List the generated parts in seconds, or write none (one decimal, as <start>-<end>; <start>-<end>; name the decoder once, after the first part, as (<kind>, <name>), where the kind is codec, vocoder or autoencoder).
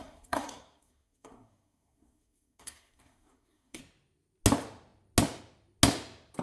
0.0-3.8 (codec, SNAC)